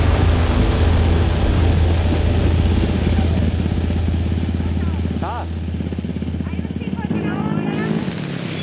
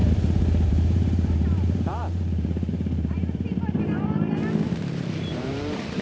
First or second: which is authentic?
first